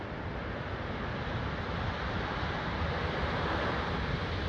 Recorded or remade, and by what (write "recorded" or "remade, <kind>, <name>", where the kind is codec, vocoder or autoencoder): recorded